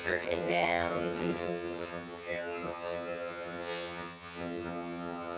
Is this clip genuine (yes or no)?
no